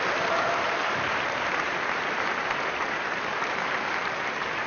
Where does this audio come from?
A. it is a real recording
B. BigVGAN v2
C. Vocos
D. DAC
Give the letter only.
B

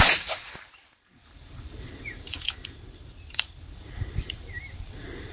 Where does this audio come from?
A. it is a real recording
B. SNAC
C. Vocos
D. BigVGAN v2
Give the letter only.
D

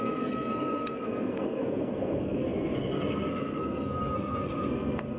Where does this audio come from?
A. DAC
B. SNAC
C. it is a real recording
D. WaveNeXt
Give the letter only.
B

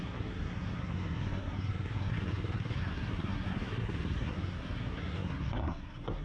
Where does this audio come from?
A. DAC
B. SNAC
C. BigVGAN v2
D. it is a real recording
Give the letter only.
B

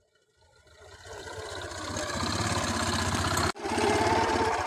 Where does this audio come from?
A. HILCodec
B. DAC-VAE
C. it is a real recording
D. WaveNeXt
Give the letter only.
C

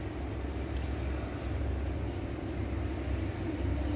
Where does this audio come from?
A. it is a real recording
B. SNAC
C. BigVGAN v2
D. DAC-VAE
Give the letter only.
A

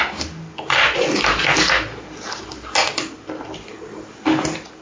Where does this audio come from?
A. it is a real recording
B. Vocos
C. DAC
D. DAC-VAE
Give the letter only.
A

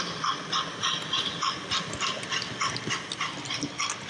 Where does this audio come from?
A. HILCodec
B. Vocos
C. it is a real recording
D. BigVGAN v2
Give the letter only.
C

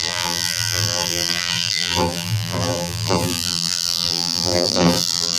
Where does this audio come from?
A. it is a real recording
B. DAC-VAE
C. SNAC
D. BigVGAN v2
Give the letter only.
D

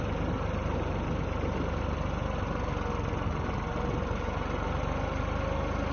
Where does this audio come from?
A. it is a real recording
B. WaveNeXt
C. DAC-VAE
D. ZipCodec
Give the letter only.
A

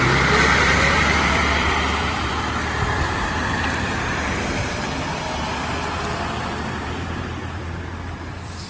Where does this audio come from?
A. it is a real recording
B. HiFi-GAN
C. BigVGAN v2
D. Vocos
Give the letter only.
C